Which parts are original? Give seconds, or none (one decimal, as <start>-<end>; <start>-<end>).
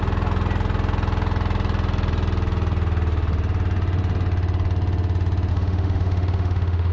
0.0-5.5